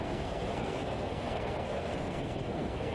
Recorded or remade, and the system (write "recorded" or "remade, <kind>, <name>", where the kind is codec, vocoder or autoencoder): remade, codec, SNAC